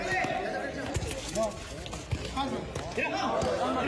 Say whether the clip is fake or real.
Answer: real